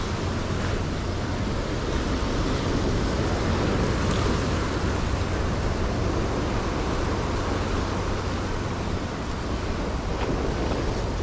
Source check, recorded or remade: recorded